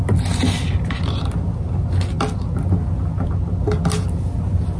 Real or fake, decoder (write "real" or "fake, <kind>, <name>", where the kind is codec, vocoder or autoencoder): real